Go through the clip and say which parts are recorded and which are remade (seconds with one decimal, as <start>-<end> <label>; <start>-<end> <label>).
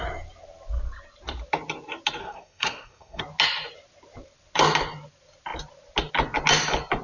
0.0-2.2 recorded; 2.2-3.2 remade; 3.2-7.0 recorded